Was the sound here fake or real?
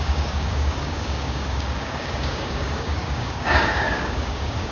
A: fake